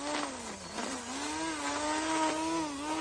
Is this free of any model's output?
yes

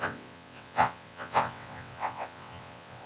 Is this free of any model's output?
no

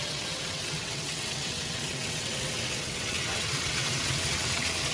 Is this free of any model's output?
no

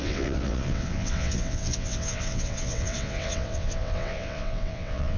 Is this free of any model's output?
no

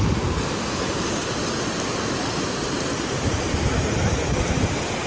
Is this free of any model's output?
yes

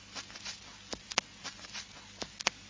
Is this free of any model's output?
yes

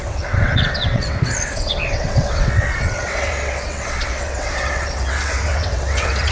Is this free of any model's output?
no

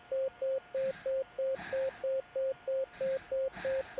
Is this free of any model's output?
yes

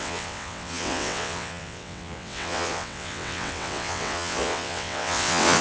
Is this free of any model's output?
no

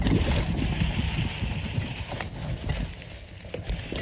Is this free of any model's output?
yes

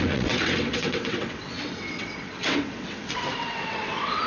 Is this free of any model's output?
no